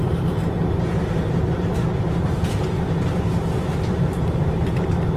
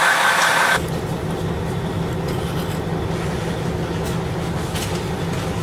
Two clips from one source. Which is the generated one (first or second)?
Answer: first